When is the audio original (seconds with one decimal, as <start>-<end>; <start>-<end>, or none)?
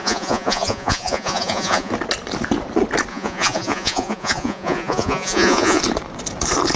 1.9-3.1; 5.8-6.8